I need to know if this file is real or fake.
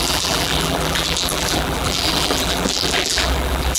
fake